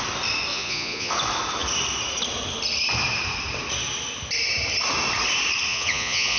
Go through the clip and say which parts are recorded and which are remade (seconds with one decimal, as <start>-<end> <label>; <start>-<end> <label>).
0.0-0.5 recorded; 0.5-1.1 remade; 1.1-5.7 recorded; 5.7-6.4 remade